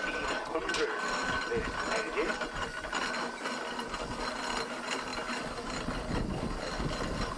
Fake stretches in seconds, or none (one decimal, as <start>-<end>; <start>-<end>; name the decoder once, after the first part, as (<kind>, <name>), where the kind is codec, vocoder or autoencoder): none